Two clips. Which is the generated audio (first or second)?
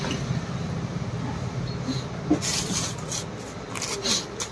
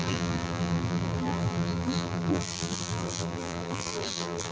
second